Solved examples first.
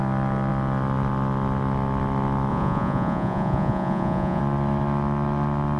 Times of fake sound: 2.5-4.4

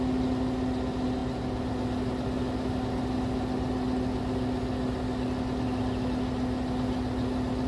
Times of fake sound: none

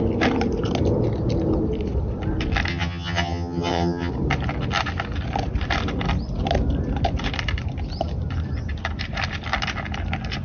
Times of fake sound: 2.7-4.1

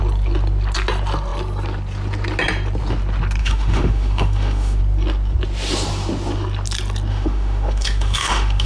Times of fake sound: 3.4-4.8; 7.1-8.7

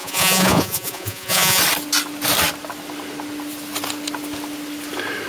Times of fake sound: 0.0-1.6

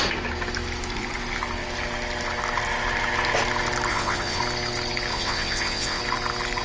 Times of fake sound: 3.9-4.4; 5.1-6.0

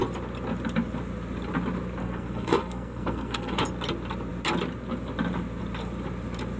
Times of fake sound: 2.0-3.6

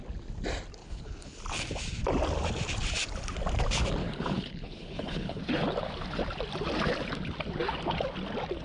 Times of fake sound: 0.8-1.4; 4.0-5.4